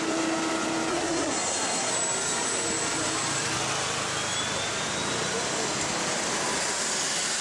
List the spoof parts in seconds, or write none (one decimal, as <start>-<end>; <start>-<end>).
0.9-1.9